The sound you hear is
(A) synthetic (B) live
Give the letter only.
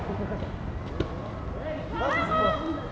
B